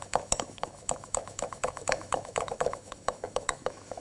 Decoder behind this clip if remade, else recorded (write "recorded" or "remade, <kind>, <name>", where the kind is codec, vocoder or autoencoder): remade, autoencoder, DAC-VAE